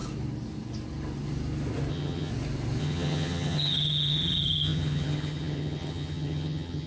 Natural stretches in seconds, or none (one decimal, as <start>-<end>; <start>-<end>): 0.0-1.9; 2.3-2.8